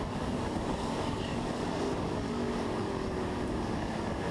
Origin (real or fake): fake